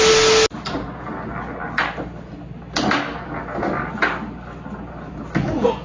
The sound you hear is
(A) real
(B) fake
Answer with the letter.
A